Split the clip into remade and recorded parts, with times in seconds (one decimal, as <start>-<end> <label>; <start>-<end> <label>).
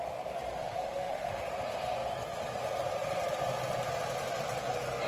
0.0-0.6 recorded; 0.6-1.4 remade; 1.4-5.1 recorded